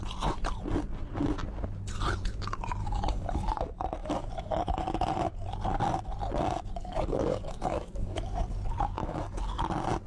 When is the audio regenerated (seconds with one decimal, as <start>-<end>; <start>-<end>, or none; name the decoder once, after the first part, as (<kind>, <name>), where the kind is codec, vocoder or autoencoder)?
2.8-3.6 (codec, DAC); 4.0-4.7; 6.8-8.4; 9.0-9.6